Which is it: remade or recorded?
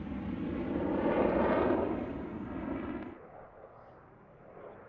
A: recorded